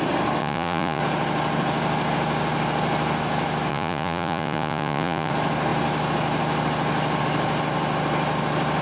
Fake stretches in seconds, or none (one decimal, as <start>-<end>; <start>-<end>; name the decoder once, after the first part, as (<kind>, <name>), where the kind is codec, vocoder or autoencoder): 0.4-1.0 (vocoder, Vocos); 3.7-5.3